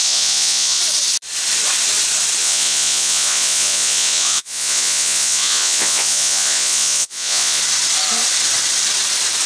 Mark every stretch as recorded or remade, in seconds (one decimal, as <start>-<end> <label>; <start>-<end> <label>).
0.0-0.8 remade; 0.8-2.4 recorded; 2.4-7.6 remade; 7.6-9.5 recorded